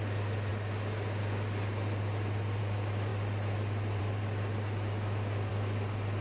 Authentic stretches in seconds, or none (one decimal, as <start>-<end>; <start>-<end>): 0.0-6.2